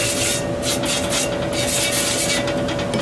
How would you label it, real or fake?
real